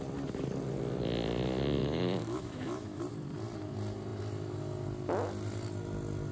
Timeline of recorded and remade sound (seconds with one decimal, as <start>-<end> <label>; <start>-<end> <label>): 0.0-1.8 recorded; 1.8-3.0 remade; 3.0-6.3 recorded